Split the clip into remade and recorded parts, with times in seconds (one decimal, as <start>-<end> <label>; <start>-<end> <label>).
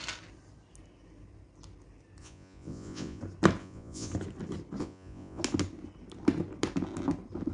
0.0-2.2 recorded; 2.2-3.2 remade; 3.2-3.6 recorded; 3.6-4.1 remade; 4.1-4.8 recorded; 4.8-5.4 remade; 5.4-7.5 recorded